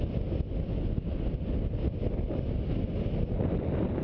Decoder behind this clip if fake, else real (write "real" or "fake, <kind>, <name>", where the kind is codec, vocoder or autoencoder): real